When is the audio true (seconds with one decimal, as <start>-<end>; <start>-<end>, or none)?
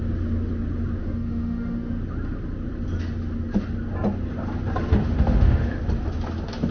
0.0-1.0; 2.0-5.0; 5.8-6.7